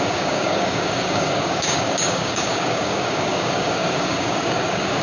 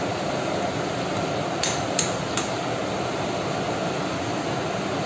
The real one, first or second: second